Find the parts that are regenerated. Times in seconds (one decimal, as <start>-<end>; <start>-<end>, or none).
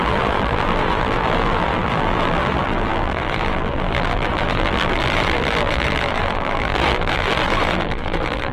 0.0-8.5